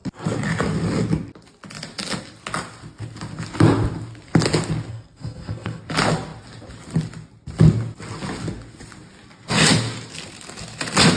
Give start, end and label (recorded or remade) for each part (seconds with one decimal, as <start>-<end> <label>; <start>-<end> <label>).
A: 0.0-4.9 recorded; 4.9-5.8 remade; 5.8-11.2 recorded